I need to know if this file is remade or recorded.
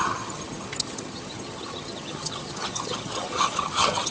remade